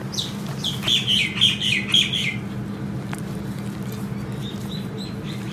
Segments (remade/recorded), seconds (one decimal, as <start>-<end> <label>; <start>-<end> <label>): 0.0-5.5 recorded